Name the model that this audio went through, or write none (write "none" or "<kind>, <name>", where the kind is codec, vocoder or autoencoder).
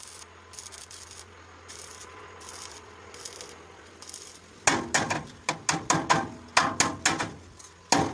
none